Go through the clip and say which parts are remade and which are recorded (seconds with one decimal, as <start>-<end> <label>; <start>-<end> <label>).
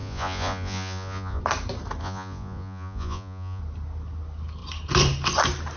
0.0-1.4 remade; 1.4-2.0 recorded; 2.0-3.6 remade; 3.6-5.8 recorded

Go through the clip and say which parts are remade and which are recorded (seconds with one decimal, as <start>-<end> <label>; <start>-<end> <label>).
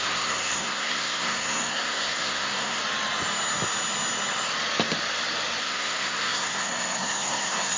0.0-2.8 remade; 2.8-5.6 recorded; 5.6-7.8 remade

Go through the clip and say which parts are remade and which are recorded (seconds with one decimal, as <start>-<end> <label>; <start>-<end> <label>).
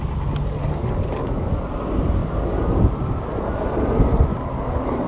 0.0-0.6 recorded; 0.6-1.6 remade; 1.6-4.3 recorded; 4.3-5.1 remade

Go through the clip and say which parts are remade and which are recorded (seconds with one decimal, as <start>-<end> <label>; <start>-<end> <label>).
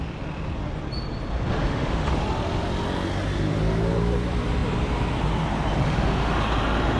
0.0-1.6 recorded; 1.6-2.1 remade; 2.1-5.8 recorded; 5.8-6.3 remade; 6.3-7.0 recorded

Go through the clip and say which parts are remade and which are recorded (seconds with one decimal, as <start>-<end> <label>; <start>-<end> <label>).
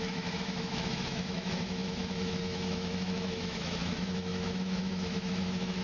0.0-5.8 remade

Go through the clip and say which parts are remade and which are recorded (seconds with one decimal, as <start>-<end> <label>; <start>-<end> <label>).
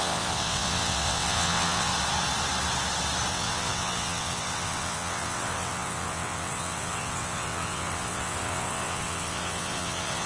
0.0-1.9 remade; 1.9-3.3 recorded; 3.3-10.3 remade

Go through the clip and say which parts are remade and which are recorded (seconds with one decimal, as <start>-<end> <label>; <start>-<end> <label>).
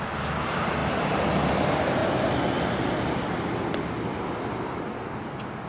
0.0-5.7 recorded